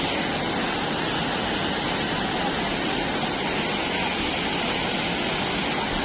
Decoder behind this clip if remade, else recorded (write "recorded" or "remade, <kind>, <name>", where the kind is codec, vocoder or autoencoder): recorded